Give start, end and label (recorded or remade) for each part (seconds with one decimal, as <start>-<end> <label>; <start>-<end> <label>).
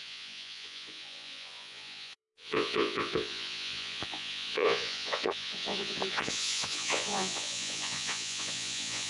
0.0-9.1 remade